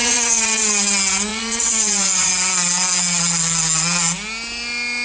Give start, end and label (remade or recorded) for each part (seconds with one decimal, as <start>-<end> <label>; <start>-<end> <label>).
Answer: 0.0-0.6 remade; 0.6-1.3 recorded; 1.3-2.3 remade; 2.3-5.0 recorded